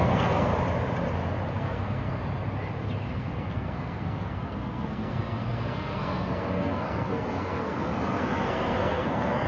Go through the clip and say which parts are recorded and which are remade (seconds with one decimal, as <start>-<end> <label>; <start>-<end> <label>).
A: 0.0-0.5 remade; 0.5-1.5 recorded; 1.5-2.2 remade; 2.2-3.1 recorded; 3.1-9.5 remade